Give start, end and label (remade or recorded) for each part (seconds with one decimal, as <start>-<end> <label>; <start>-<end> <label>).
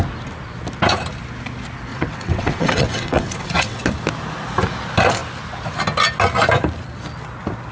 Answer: 0.0-1.9 recorded; 1.9-3.8 remade; 3.8-7.7 recorded